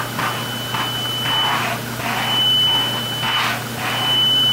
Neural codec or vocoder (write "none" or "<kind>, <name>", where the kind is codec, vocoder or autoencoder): none